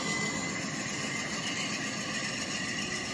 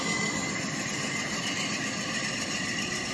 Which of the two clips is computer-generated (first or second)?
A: second